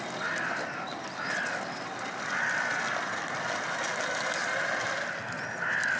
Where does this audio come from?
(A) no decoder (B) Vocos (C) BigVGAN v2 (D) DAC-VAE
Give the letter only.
A